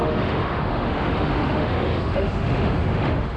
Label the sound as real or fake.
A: fake